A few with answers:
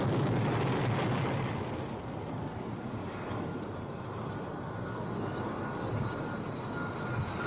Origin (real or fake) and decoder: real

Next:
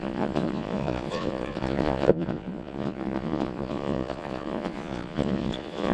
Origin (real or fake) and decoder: fake, vocoder, Vocos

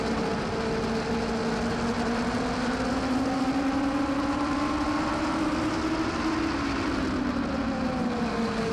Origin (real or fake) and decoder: real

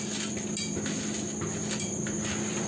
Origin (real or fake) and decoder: real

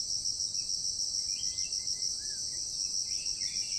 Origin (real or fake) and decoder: real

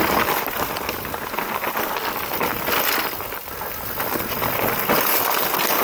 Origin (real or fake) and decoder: real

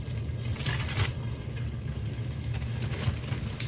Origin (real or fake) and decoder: real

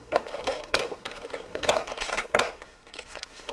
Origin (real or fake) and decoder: fake, codec, SNAC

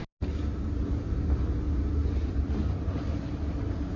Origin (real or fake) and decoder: real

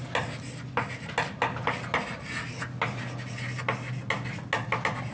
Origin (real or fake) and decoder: real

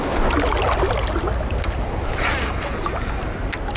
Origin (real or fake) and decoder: real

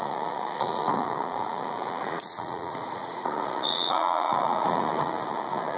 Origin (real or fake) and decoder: fake, vocoder, Vocos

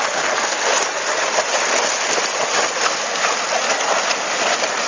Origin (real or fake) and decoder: real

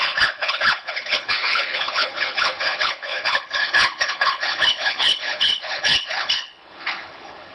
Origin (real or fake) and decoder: fake, codec, HILCodec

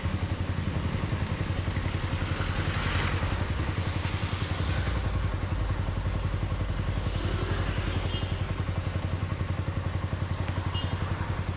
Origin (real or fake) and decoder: real